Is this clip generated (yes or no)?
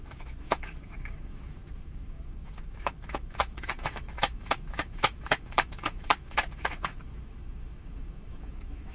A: yes